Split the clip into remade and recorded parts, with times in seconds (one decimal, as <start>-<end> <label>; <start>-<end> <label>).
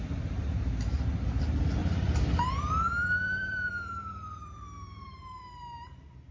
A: 0.0-1.8 recorded; 1.8-5.6 remade; 5.6-6.3 recorded